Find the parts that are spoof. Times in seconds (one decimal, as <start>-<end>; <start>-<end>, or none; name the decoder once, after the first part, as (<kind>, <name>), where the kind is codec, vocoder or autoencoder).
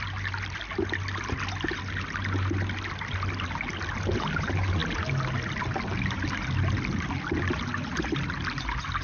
none